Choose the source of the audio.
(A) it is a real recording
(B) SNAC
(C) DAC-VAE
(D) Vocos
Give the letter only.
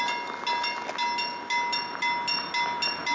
A